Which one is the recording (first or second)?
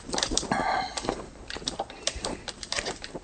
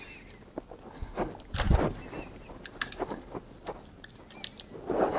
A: second